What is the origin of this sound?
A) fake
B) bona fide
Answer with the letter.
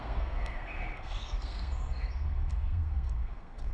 A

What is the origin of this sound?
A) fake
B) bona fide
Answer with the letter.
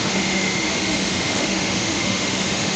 A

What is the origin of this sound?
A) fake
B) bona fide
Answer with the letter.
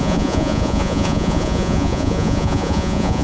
A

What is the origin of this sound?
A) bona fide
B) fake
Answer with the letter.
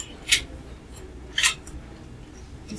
A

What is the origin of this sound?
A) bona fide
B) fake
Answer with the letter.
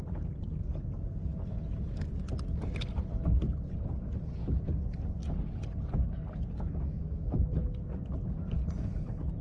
A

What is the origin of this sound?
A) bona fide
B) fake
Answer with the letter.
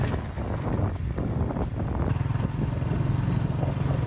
A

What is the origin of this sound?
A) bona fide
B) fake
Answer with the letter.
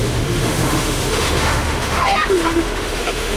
B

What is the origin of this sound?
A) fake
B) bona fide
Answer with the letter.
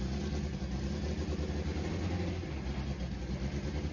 B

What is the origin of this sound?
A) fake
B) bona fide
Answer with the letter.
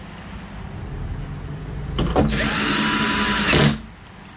B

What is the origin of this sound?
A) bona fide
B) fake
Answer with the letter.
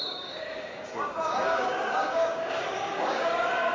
B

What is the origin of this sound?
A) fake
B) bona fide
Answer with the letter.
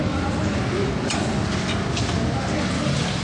B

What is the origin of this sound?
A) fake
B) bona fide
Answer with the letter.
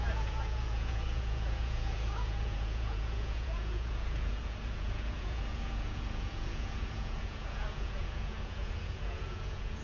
A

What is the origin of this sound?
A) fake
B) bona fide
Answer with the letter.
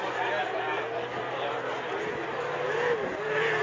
B